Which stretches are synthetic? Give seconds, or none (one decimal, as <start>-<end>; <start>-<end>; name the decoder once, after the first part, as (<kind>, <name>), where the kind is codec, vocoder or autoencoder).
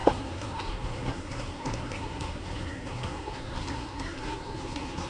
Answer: 0.0-5.1 (codec, SNAC)